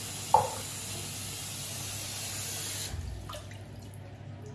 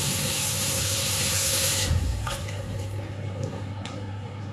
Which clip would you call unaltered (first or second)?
first